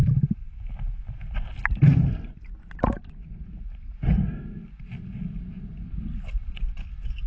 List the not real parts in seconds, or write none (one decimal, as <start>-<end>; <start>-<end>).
none